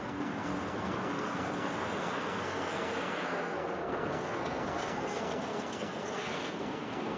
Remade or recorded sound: remade